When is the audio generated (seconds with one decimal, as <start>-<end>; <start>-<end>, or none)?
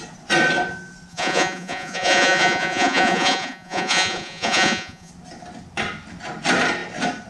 1.1-5.1